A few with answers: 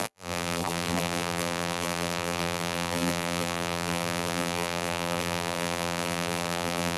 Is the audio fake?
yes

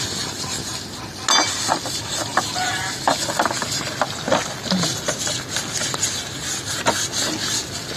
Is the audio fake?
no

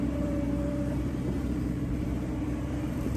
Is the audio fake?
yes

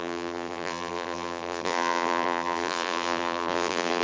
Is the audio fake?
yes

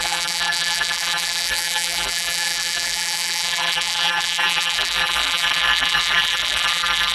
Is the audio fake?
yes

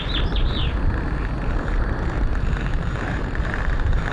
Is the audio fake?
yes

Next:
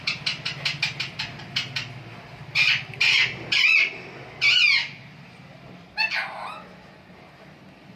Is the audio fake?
no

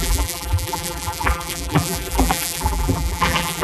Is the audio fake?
yes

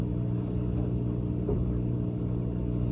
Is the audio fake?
no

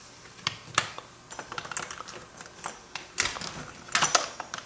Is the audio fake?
no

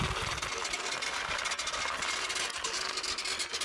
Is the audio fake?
no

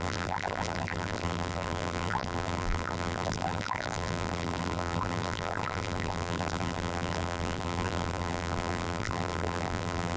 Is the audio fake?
yes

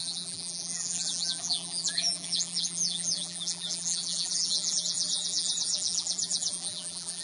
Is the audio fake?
yes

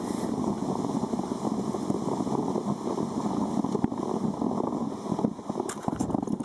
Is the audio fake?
no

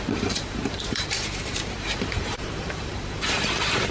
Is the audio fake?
yes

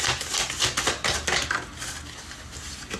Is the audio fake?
no